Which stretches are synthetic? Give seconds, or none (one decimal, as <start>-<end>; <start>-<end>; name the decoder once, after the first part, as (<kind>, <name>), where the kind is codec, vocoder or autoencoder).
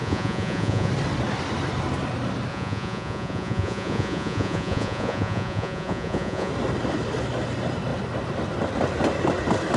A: 0.0-0.9 (vocoder, Vocos); 2.5-6.5